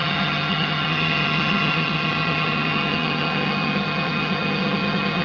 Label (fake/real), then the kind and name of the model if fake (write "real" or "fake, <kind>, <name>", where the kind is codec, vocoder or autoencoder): fake, vocoder, HiFi-GAN